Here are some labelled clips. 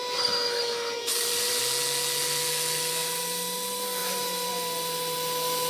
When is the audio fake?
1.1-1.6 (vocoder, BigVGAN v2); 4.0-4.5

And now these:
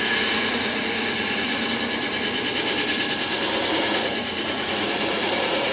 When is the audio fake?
0.0-1.5 (vocoder, Vocos); 3.8-5.7